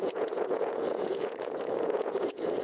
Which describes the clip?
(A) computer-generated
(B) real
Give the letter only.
A